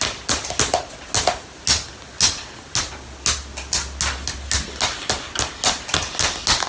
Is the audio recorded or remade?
recorded